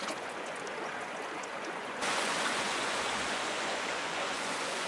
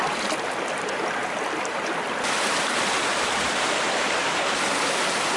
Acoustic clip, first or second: second